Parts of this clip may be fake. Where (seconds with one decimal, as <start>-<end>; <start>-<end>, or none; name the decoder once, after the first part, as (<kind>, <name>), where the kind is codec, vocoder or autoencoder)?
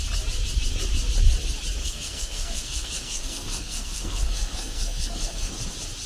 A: 1.8-5.5 (codec, SNAC)